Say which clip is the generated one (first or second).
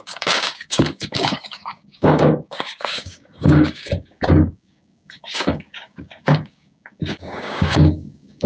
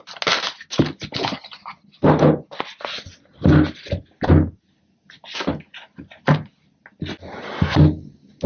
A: first